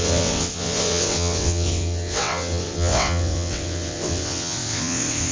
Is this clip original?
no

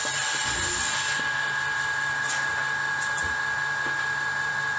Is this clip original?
yes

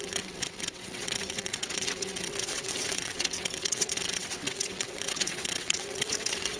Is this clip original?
no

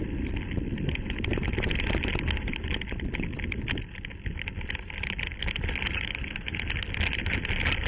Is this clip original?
yes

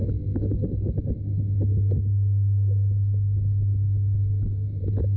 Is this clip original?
yes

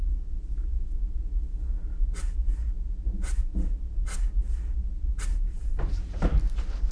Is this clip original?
yes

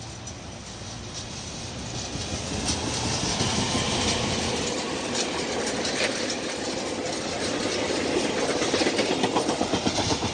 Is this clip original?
yes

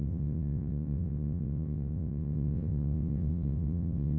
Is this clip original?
no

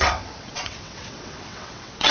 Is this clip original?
no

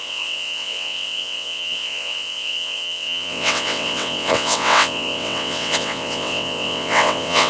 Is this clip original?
no